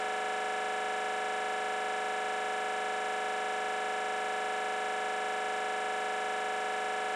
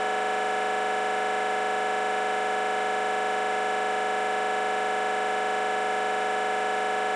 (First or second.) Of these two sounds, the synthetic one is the second